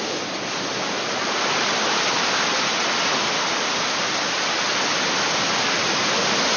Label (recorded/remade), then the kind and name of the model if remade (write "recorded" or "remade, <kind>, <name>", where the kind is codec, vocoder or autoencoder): recorded